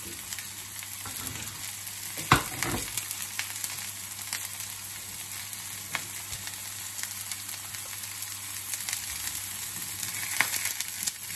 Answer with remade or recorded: recorded